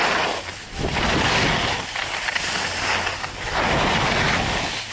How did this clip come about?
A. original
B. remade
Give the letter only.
A